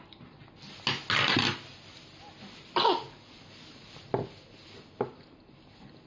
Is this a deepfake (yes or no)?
no